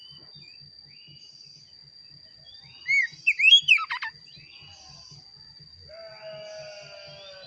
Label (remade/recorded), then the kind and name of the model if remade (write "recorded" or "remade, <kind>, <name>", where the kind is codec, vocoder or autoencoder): recorded